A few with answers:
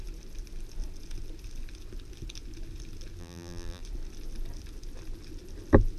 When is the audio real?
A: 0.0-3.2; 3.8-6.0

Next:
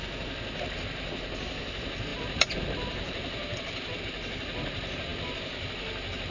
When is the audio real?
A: 0.0-2.1; 4.0-6.3